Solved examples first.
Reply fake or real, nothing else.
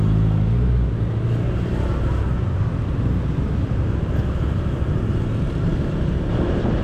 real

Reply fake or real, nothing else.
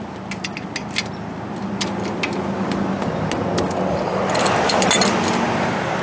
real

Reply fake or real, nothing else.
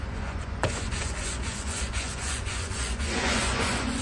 fake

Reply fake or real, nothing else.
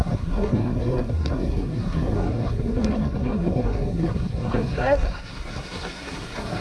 fake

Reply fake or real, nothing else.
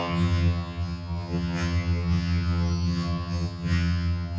fake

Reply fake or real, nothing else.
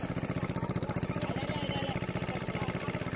fake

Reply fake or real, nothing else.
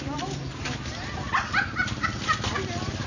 real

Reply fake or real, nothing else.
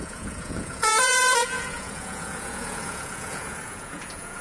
fake